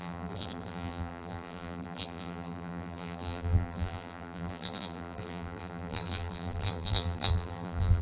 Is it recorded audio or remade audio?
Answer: remade